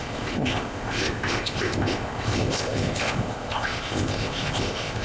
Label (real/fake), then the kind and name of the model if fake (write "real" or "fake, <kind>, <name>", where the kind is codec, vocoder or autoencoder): fake, codec, ZipCodec